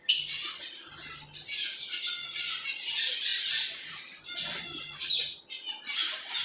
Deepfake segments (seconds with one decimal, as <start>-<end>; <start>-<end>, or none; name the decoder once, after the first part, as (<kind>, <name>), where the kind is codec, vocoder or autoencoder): none